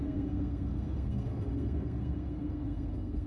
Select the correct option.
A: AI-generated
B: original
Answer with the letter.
A